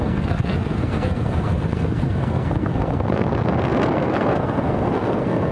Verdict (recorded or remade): remade